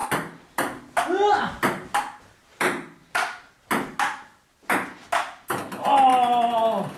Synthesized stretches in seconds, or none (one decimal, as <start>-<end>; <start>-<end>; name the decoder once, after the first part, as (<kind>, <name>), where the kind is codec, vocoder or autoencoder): none